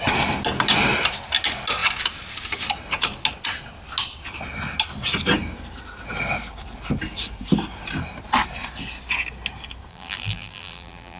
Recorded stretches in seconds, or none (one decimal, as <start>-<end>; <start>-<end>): 0.0-9.9